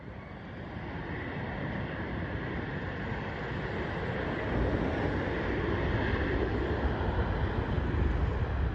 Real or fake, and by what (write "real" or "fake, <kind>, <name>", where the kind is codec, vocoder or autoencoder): real